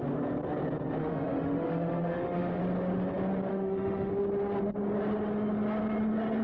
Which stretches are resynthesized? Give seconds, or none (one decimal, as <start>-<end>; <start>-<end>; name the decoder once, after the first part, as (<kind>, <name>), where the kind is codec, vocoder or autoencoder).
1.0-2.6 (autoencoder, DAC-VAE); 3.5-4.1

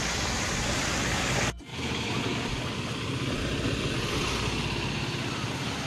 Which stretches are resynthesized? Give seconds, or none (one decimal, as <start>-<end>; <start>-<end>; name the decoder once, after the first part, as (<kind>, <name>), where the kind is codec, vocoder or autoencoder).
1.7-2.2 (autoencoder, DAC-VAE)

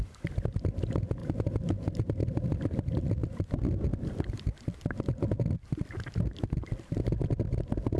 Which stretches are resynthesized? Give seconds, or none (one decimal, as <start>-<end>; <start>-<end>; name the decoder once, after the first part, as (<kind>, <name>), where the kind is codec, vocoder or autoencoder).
none

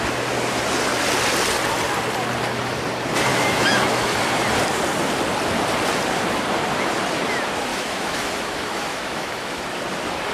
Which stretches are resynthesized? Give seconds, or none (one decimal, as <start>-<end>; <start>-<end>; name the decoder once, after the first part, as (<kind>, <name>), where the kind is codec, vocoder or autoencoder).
3.3-4.2 (autoencoder, DAC-VAE); 7.7-9.6

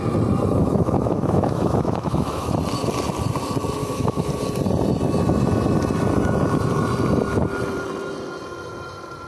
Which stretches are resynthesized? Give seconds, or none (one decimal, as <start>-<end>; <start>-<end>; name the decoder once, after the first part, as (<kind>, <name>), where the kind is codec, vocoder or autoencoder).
0.6-2.5 (autoencoder, DAC-VAE); 3.8-4.3

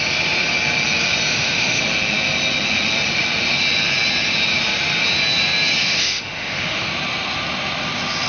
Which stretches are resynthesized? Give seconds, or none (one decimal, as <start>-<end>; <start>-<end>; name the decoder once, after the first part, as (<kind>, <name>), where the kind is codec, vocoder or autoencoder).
1.3-1.8 (autoencoder, DAC-VAE); 5.8-6.9

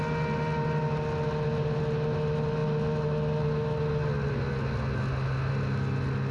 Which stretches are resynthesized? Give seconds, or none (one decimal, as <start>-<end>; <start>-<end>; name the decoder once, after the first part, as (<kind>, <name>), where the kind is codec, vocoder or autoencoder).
none